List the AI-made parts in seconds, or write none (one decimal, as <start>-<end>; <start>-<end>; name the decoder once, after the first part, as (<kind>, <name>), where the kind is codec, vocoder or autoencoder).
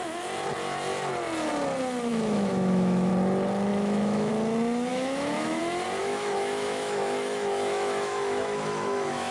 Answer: 2.1-3.1 (autoencoder, DAC-VAE); 3.7-4.3; 4.9-5.6; 6.0-9.3